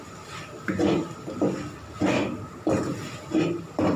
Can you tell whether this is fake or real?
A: real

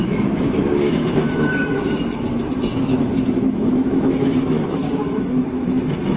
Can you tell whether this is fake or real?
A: fake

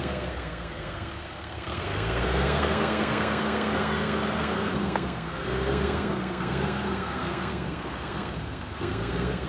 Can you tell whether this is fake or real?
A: fake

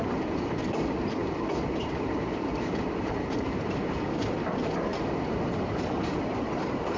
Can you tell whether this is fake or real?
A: fake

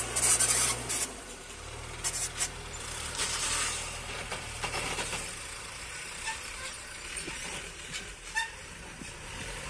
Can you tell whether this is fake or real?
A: fake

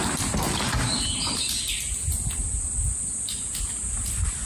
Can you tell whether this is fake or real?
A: real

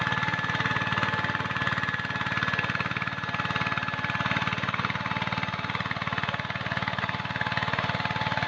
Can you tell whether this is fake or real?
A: real